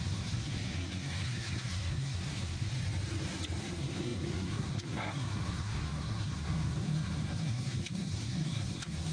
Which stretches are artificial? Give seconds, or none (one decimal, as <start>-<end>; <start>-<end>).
0.0-2.7; 3.6-9.1